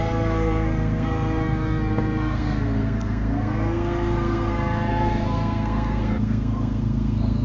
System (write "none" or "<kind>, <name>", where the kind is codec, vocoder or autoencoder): codec, SNAC